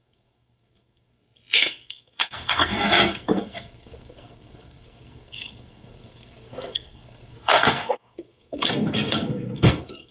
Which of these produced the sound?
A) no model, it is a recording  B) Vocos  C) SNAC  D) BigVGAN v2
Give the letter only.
C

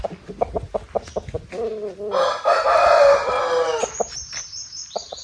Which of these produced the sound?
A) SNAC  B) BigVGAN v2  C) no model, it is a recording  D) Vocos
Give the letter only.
C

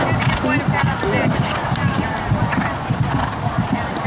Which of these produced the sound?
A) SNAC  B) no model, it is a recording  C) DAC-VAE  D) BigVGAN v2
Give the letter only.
B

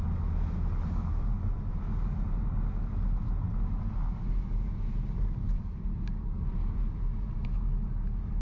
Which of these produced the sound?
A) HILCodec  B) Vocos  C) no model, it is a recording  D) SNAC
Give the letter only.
C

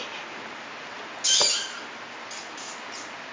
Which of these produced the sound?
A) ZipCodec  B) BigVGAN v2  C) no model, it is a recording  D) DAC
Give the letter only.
C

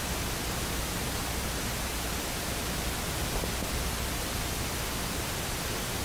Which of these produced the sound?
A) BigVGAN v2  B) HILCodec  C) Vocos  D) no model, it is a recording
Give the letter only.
D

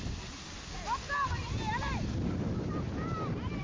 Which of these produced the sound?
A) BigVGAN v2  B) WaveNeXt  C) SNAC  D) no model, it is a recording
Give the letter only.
D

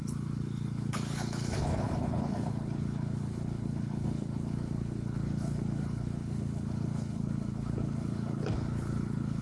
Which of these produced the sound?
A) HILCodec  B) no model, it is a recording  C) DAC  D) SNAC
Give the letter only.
A